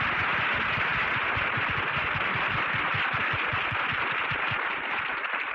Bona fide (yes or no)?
yes